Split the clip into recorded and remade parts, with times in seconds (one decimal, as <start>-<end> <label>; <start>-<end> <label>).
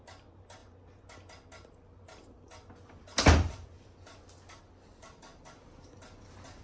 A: 0.0-6.6 recorded